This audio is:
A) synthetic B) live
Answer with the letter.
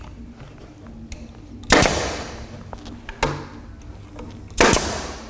B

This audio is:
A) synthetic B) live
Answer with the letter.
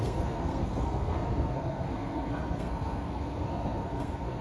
A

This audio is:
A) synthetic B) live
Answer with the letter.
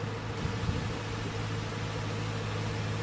B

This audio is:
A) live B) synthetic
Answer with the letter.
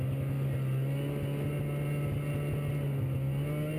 A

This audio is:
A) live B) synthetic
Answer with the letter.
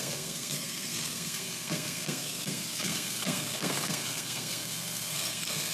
B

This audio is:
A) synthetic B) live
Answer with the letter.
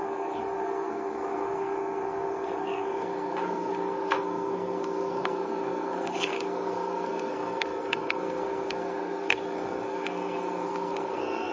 A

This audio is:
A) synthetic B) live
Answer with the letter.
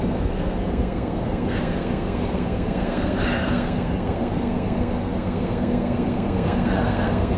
A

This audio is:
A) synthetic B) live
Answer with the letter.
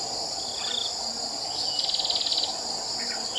B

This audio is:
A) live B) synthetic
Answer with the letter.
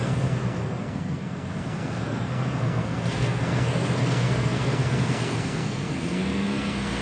B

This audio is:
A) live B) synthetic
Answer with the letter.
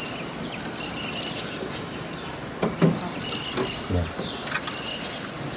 A